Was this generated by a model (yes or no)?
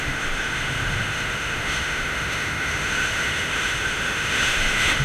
yes